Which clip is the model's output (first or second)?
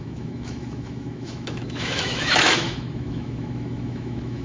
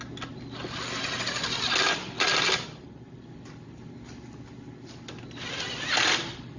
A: first